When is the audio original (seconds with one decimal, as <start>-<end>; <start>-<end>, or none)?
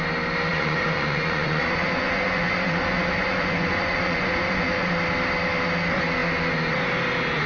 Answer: 0.0-0.5; 4.9-7.5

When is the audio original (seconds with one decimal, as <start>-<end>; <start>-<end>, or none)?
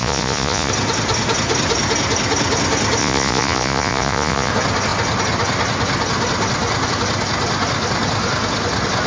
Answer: 0.7-3.0; 4.5-9.1